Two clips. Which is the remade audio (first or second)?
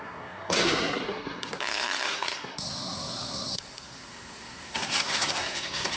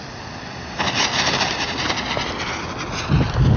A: first